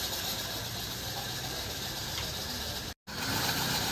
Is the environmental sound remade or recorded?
recorded